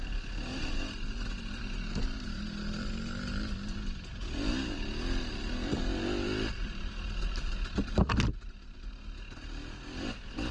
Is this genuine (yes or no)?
yes